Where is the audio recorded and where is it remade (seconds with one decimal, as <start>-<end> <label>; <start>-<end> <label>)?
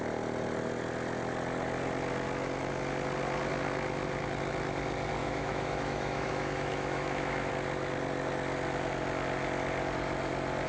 0.0-5.2 recorded; 5.2-7.5 remade; 7.5-10.7 recorded